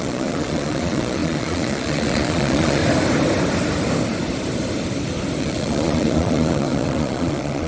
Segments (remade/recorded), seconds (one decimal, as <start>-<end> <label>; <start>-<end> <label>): 0.0-2.8 remade; 2.8-5.4 recorded; 5.4-7.7 remade